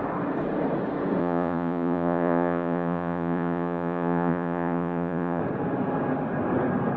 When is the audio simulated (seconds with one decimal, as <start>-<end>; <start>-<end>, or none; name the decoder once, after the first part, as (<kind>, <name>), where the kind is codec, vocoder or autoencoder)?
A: 1.2-5.4 (vocoder, Vocos)